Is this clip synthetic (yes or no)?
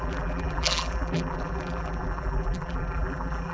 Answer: yes